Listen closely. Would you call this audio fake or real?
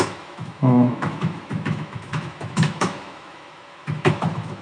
fake